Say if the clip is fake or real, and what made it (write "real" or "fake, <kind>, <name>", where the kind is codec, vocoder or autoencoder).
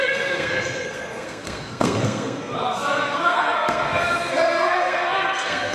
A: fake, codec, SNAC